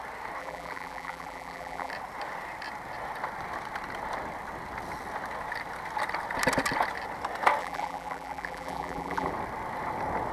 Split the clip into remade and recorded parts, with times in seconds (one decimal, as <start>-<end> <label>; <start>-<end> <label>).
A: 0.0-0.4 recorded; 0.4-1.9 remade; 1.9-7.6 recorded; 7.6-9.3 remade; 9.3-10.3 recorded